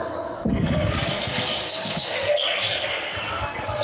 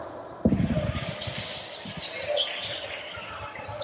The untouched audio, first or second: second